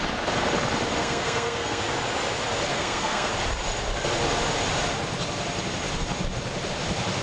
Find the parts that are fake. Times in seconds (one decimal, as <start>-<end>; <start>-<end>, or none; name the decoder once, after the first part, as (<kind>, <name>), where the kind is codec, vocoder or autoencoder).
1.0-1.8 (codec, SNAC); 2.7-3.3